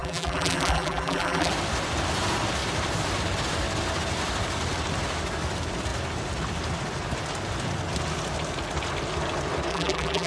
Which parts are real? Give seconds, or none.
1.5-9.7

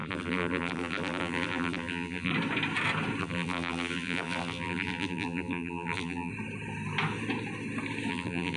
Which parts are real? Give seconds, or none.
2.3-3.2; 6.3-8.1

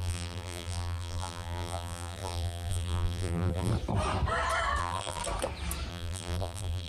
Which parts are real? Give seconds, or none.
3.7-4.8; 5.2-5.9

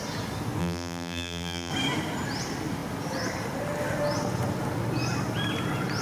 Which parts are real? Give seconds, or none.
0.0-0.6; 1.7-6.0

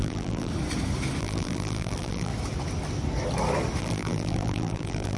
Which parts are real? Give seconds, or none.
0.5-1.2; 2.3-3.8

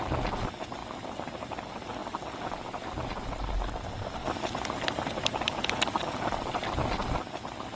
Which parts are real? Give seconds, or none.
0.0-4.2

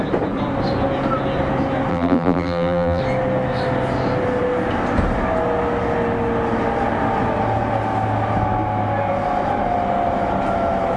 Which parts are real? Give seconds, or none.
0.0-1.9; 3.0-11.0